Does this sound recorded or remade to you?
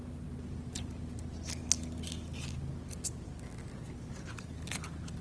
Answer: recorded